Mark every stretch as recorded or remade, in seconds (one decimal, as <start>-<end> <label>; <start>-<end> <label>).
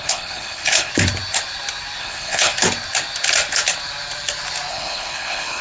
0.0-0.9 remade; 0.9-2.0 recorded; 2.0-2.5 remade; 2.5-4.7 recorded; 4.7-5.6 remade